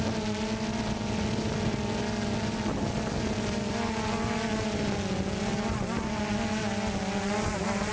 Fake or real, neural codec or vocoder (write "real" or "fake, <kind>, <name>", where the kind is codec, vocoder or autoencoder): real